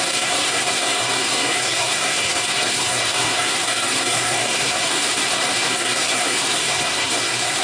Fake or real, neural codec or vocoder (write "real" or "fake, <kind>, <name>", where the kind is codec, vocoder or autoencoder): fake, codec, SNAC